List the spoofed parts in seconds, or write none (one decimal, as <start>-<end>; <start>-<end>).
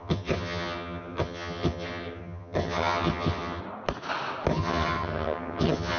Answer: 0.0-3.6; 4.5-6.0